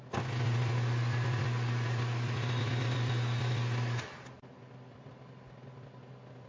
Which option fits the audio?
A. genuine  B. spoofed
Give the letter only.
A